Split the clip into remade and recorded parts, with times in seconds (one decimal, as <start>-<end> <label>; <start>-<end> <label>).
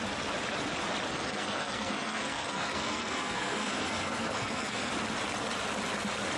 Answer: 0.0-1.1 recorded; 1.1-4.9 remade; 4.9-6.4 recorded